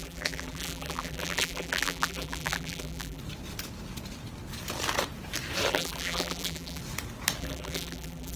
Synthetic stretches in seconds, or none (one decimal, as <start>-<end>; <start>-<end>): 0.0-3.2; 5.7-6.8; 7.4-8.4